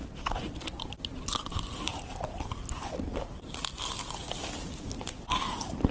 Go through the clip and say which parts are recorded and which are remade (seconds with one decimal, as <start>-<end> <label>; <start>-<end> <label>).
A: 0.0-5.9 recorded

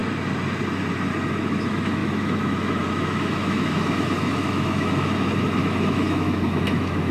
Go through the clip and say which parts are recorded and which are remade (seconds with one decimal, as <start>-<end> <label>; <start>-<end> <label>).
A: 0.0-1.3 recorded; 1.3-7.1 remade

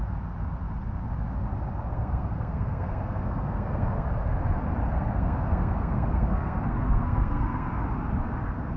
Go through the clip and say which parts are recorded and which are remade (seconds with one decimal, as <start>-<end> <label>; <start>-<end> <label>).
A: 0.0-1.9 recorded; 1.9-4.1 remade; 4.1-4.9 recorded; 4.9-7.8 remade; 7.8-8.8 recorded

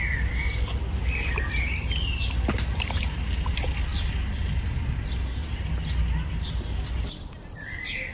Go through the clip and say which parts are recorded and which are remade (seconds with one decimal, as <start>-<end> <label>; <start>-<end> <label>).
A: 0.0-8.1 recorded